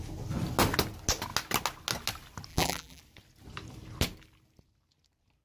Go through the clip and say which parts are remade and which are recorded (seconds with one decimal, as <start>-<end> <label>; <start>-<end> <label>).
0.0-2.5 recorded; 2.5-3.0 remade; 3.0-5.4 recorded